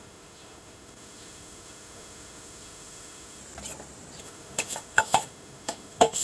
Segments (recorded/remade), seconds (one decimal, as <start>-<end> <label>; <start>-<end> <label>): 0.0-3.4 remade; 3.4-4.2 recorded; 4.2-6.2 remade